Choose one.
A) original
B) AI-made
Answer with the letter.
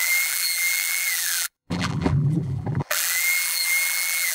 B